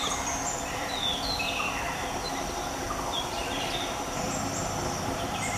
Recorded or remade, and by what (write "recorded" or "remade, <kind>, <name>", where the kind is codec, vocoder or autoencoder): remade, vocoder, BigVGAN v2